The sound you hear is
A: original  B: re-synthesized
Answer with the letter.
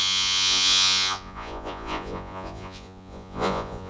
B